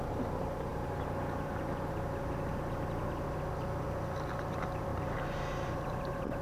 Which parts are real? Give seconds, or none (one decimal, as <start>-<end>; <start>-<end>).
0.7-4.5